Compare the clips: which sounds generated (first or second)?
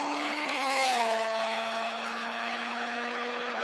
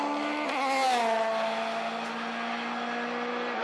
first